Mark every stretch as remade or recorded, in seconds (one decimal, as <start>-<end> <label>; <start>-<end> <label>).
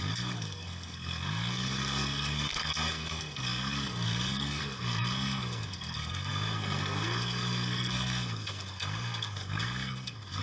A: 0.0-10.4 remade